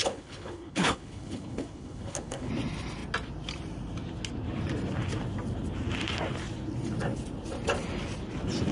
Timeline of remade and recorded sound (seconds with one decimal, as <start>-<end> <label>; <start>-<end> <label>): 0.0-2.5 remade; 2.5-8.7 recorded